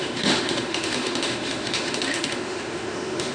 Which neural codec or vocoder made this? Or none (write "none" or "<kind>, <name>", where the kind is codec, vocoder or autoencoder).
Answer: autoencoder, DAC-VAE